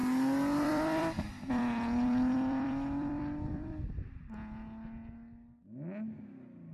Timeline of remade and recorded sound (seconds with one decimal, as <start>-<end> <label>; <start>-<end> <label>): 0.0-3.9 remade; 3.9-6.7 recorded